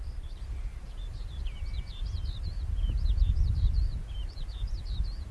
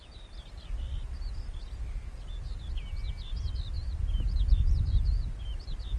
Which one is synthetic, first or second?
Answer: first